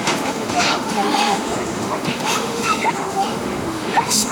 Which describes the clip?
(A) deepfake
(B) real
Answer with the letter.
A